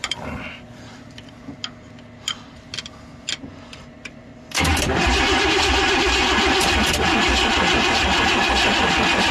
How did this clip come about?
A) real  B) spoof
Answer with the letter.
A